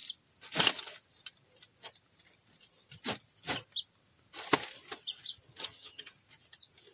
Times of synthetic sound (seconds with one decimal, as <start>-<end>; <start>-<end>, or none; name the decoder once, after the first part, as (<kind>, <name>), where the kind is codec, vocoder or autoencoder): 5.5-6.1 (vocoder, HiFi-GAN)